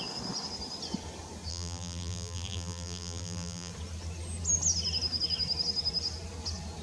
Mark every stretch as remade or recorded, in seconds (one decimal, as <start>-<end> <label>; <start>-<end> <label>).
0.0-1.5 recorded; 1.5-3.7 remade; 3.7-6.8 recorded

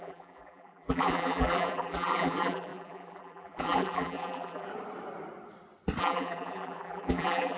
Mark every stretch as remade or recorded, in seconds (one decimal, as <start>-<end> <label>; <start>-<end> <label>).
0.0-4.7 remade; 4.7-6.0 recorded; 6.0-7.6 remade

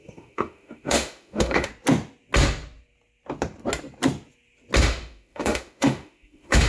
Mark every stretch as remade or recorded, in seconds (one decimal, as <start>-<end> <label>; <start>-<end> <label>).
0.0-1.7 remade; 1.7-4.8 recorded; 4.8-6.7 remade

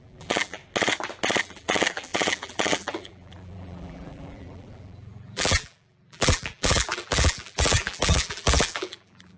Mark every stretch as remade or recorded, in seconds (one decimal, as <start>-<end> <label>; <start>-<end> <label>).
0.0-0.6 remade; 0.6-1.4 recorded; 1.4-9.4 remade

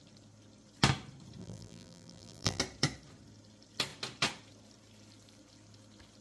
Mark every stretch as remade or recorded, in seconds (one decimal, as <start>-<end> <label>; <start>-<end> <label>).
0.0-1.4 recorded; 1.4-2.6 remade; 2.6-6.2 recorded